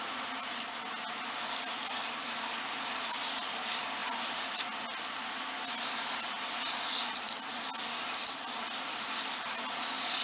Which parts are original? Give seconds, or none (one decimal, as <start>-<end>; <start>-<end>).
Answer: 0.0-10.2